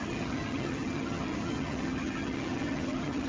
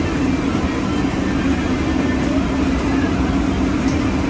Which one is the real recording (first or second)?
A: second